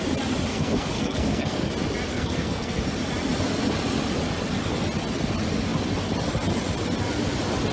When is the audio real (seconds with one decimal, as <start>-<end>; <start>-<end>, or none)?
0.0-0.5; 1.7-2.1; 2.8-7.7